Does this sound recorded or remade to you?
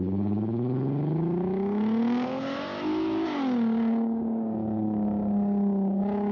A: remade